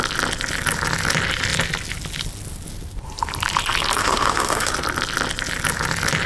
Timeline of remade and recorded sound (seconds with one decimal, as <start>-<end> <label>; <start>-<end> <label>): 0.0-4.0 recorded; 4.0-4.7 remade; 4.7-6.3 recorded